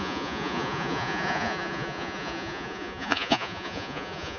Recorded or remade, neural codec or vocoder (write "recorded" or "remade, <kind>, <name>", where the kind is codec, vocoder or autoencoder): remade, vocoder, Vocos